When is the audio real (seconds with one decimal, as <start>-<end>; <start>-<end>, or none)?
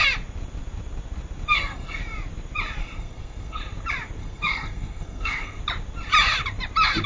0.0-1.5; 2.0-2.8; 3.6-4.2; 5.6-7.1